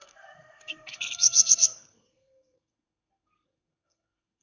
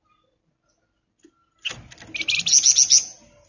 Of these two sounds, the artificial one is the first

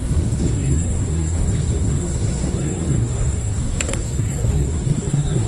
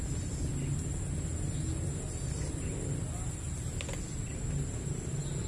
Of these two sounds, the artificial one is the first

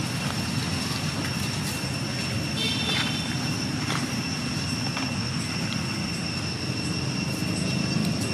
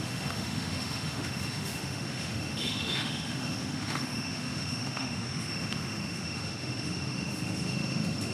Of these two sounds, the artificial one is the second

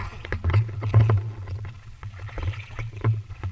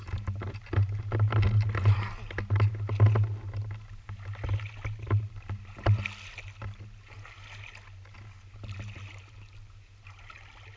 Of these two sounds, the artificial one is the first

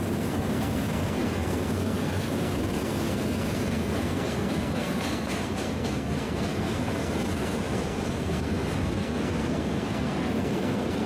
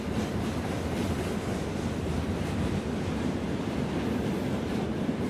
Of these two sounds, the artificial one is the first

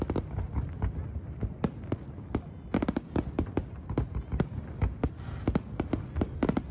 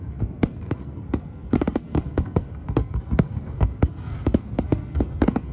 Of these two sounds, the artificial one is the second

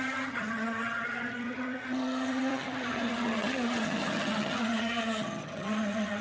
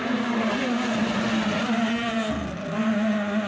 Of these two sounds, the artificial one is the first